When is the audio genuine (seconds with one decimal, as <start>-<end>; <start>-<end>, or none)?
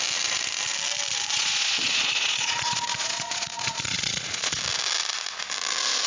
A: 0.0-1.3; 4.6-6.1